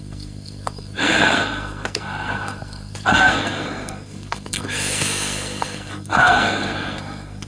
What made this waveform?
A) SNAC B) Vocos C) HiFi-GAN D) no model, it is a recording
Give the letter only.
A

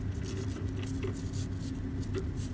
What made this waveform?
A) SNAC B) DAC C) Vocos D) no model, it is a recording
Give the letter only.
D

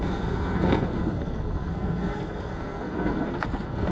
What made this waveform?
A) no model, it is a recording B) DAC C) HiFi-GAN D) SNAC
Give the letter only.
D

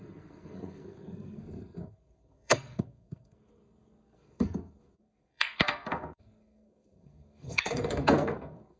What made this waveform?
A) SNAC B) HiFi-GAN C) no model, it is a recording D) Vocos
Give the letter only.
A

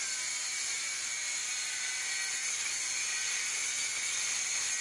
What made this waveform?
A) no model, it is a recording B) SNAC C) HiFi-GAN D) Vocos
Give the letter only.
A